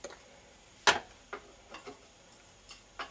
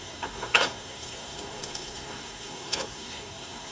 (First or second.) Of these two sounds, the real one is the first